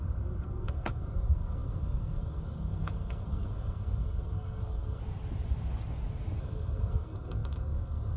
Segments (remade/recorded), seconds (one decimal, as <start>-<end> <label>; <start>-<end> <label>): 0.0-5.0 remade; 5.0-6.4 recorded; 6.4-8.2 remade